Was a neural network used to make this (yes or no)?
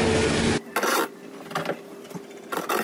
no